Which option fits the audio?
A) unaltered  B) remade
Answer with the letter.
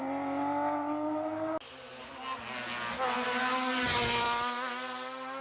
A